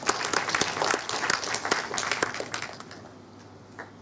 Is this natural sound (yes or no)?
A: yes